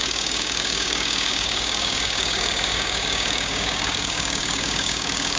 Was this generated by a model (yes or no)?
yes